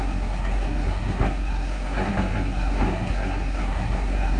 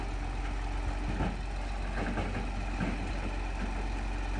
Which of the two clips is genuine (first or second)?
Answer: second